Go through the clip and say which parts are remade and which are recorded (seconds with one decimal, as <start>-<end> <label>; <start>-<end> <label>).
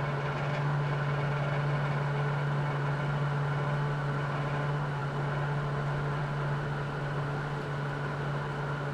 0.0-8.9 recorded